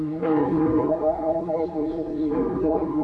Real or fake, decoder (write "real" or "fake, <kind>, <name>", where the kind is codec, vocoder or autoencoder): fake, codec, SNAC